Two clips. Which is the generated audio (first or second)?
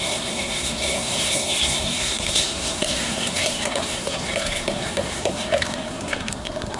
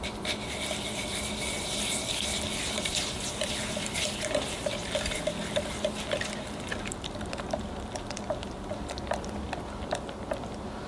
first